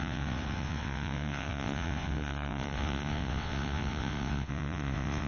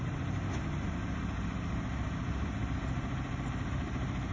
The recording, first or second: second